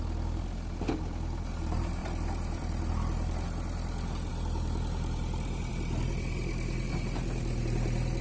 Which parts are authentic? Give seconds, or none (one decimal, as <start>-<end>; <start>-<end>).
0.0-2.0; 2.9-4.3; 5.7-8.2